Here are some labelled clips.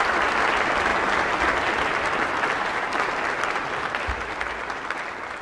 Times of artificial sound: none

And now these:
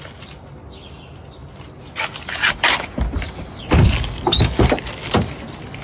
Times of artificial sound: none

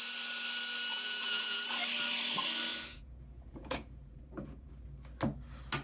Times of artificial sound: 0.9-1.6; 2.7-4.7

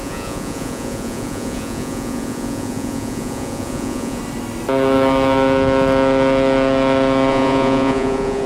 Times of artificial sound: 0.0-4.2; 7.3-8.5

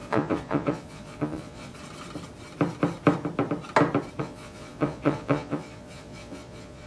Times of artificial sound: 0.0-1.7; 4.2-6.9

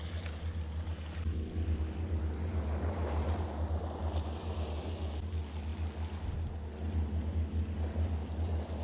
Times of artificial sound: none